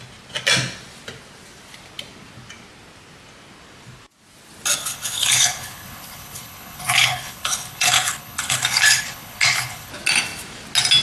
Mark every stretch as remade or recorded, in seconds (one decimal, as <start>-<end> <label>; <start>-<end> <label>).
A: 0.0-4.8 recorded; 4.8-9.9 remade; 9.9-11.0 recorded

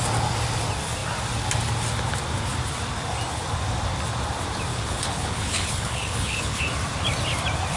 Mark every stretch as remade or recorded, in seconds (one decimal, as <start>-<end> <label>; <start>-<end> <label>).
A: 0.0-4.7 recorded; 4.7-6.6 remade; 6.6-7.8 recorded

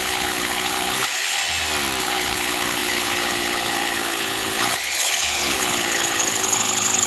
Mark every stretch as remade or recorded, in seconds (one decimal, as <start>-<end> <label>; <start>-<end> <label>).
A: 0.0-1.4 remade; 1.4-2.0 recorded; 2.0-7.1 remade

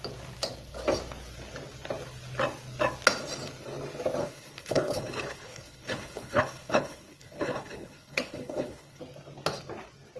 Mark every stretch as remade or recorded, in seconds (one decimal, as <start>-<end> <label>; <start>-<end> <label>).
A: 0.0-4.2 recorded; 4.2-9.0 remade; 9.0-10.2 recorded

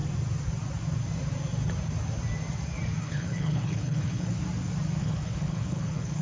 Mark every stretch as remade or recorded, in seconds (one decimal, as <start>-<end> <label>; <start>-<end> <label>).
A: 0.0-3.0 recorded; 3.0-4.4 remade; 4.4-5.0 recorded; 5.0-6.2 remade

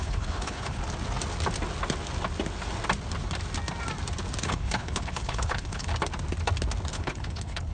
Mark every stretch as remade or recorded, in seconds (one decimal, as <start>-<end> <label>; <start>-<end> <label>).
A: 0.0-0.8 remade; 0.8-4.4 recorded; 4.4-5.9 remade; 5.9-6.9 recorded; 6.9-7.7 remade

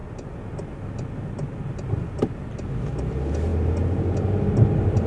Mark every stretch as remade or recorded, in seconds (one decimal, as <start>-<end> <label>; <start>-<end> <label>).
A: 0.0-5.1 recorded